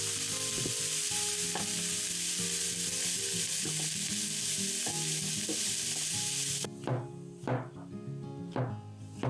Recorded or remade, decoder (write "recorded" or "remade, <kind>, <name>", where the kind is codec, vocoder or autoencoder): recorded